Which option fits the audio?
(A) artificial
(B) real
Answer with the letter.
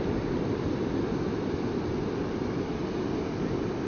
B